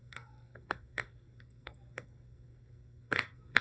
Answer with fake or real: fake